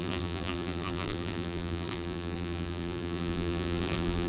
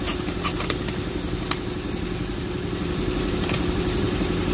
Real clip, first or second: second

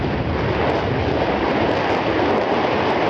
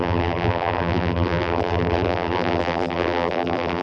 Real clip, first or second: first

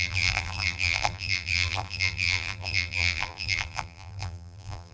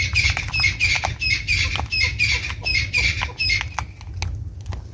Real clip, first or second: second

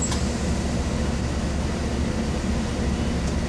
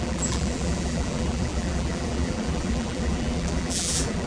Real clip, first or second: first